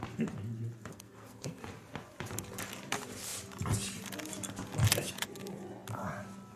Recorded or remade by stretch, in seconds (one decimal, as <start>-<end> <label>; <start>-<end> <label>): 0.0-0.9 recorded; 0.9-1.6 remade; 1.6-6.6 recorded